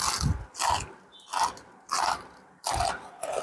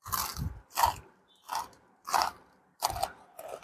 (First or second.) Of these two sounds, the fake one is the second